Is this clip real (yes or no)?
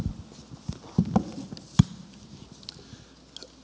yes